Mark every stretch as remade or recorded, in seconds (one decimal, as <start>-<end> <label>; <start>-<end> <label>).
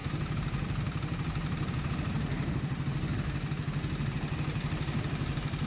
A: 0.0-1.9 remade; 1.9-5.7 recorded